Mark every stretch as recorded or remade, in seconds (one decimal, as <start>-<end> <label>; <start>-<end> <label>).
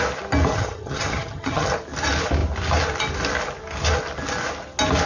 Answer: 0.0-0.5 recorded; 0.5-1.7 remade; 1.7-5.1 recorded